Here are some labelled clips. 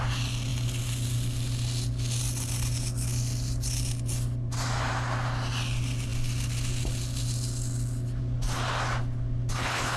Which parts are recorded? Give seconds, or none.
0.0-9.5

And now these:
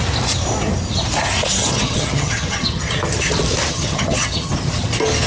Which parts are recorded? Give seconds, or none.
0.0-1.6; 2.9-3.7; 4.5-5.3

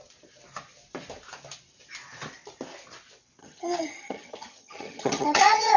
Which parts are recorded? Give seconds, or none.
0.0-3.4

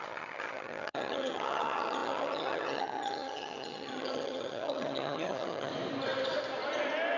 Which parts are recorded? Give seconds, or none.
5.7-7.2

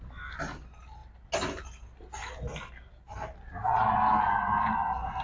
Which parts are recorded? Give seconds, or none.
0.0-5.2

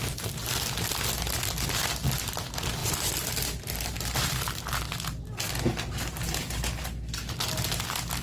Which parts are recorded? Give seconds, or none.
0.0-8.2